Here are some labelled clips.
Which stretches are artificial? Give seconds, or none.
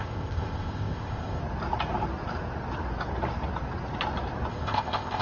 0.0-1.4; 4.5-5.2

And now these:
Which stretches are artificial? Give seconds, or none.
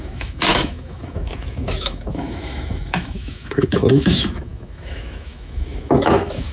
0.0-6.5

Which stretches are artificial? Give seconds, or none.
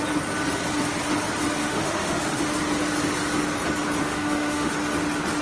1.6-2.4; 4.0-4.7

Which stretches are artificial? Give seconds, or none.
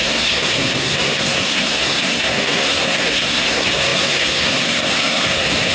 0.0-5.7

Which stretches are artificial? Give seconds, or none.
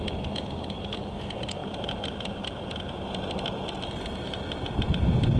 none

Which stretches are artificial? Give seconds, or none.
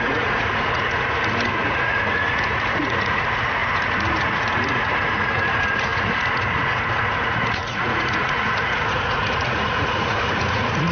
0.0-10.9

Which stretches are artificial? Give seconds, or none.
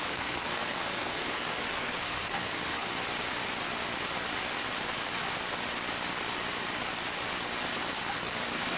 0.0-2.9; 8.1-8.8